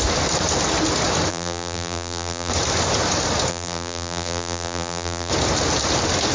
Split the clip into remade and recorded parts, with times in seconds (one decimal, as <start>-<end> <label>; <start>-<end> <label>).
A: 0.0-1.3 recorded; 1.3-2.5 remade; 2.5-3.5 recorded; 3.5-5.3 remade; 5.3-6.3 recorded